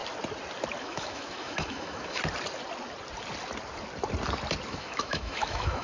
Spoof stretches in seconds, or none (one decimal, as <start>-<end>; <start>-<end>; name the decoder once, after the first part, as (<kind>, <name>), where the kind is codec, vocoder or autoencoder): 0.8-2.2 (autoencoder, DAC-VAE); 4.7-5.8